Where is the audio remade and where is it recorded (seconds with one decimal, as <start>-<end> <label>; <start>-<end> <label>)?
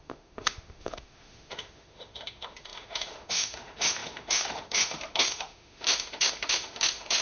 0.0-7.2 remade